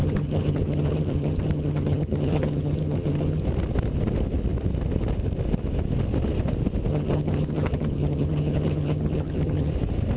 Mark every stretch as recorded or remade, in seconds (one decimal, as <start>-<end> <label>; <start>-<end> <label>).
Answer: 0.0-3.4 remade; 3.4-6.9 recorded; 6.9-9.7 remade; 9.7-10.2 recorded